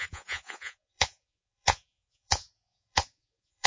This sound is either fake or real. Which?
fake